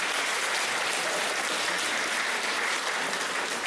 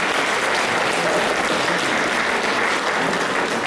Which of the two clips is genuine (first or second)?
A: second